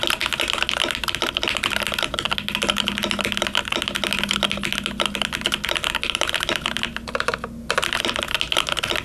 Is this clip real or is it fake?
real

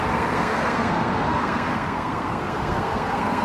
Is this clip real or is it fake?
fake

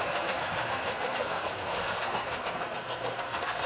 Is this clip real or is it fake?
fake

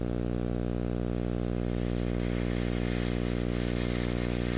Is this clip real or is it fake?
real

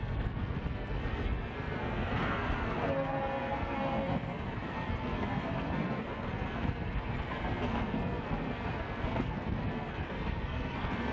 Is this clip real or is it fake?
fake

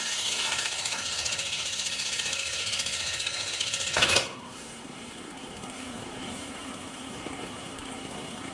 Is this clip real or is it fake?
fake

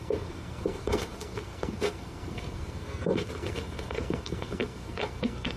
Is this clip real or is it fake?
fake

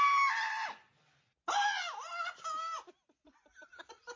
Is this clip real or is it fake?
real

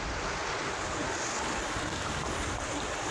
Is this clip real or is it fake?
real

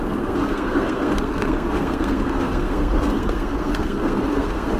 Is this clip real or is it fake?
fake